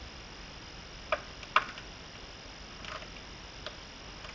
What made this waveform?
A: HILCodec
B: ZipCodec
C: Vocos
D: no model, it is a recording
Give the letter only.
D